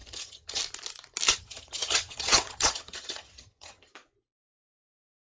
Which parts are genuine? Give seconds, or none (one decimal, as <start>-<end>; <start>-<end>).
0.6-1.3; 3.9-5.3